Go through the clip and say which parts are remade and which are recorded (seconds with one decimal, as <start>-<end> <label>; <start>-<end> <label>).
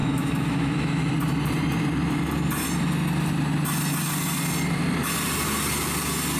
0.0-1.1 remade; 1.1-6.4 recorded